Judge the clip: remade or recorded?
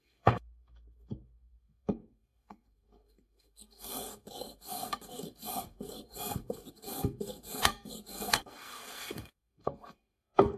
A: remade